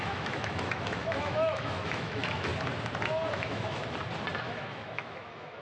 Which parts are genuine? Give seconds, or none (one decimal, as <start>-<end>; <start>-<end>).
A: 2.5-3.3; 3.8-4.4